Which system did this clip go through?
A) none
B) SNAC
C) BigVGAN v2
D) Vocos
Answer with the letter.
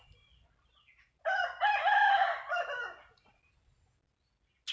A